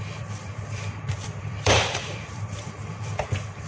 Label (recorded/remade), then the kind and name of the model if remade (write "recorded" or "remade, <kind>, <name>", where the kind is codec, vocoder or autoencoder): remade, vocoder, BigVGAN v2